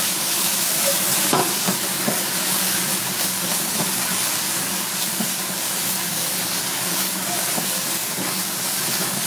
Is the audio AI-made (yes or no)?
yes